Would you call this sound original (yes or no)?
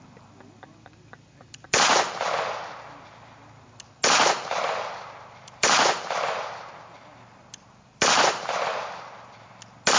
yes